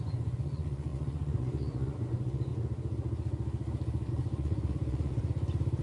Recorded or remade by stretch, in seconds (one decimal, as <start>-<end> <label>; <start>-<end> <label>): 0.0-2.5 remade; 2.5-4.1 recorded; 4.1-5.2 remade; 5.2-5.8 recorded